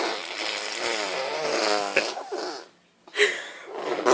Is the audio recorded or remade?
recorded